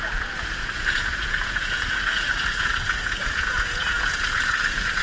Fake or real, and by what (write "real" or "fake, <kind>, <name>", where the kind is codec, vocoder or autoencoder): fake, vocoder, Vocos